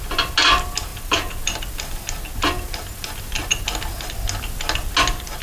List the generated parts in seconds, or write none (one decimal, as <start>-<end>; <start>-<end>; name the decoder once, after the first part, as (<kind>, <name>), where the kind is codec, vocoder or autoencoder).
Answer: none